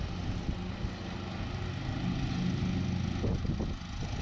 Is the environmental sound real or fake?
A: real